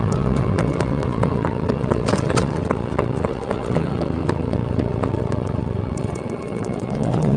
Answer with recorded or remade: remade